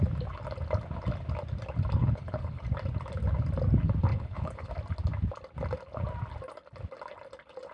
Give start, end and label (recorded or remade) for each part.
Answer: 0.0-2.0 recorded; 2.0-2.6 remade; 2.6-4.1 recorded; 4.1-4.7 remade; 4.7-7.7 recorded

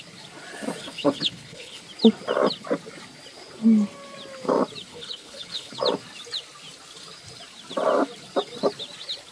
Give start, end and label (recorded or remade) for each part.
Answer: 0.0-0.8 recorded; 0.8-1.8 remade; 1.8-4.9 recorded; 4.9-5.7 remade; 5.7-9.3 recorded

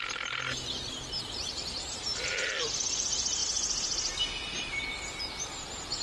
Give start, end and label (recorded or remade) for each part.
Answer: 0.0-6.0 recorded

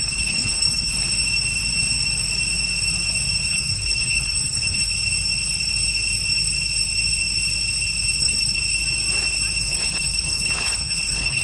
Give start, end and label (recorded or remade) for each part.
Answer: 0.0-0.9 remade; 0.9-3.5 recorded; 3.5-4.9 remade; 4.9-8.2 recorded; 8.2-8.6 remade; 8.6-9.6 recorded; 9.6-11.4 remade

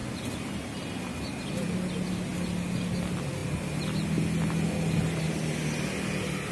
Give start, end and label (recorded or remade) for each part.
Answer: 0.0-6.5 recorded

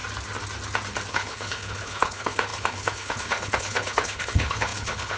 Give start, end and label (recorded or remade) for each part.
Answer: 0.0-1.1 recorded; 1.1-5.2 remade

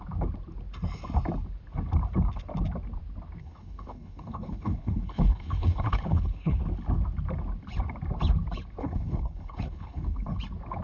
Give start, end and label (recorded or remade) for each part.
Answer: 0.0-3.4 recorded; 3.4-6.6 remade; 6.6-8.8 recorded; 8.8-10.4 remade; 10.4-10.8 recorded

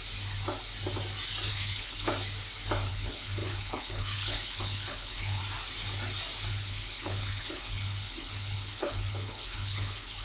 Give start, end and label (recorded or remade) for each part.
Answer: 0.0-1.5 recorded; 1.5-2.1 remade; 2.1-2.9 recorded; 2.9-5.4 remade; 5.4-6.5 recorded; 6.5-10.2 remade